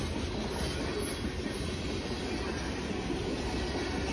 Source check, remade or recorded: recorded